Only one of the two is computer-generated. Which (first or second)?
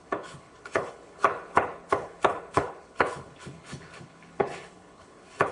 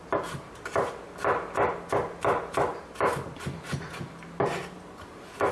first